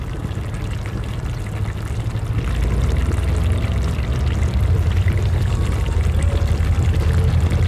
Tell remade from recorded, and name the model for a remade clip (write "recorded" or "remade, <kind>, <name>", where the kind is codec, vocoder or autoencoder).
recorded